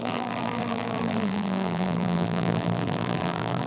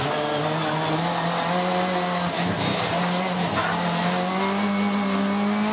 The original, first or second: second